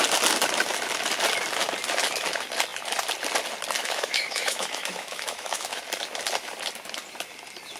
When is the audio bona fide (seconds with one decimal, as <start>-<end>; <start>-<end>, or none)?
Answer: 0.0-3.8; 5.8-7.8